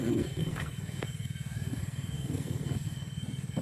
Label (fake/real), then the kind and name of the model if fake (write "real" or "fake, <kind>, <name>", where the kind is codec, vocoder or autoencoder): fake, codec, SNAC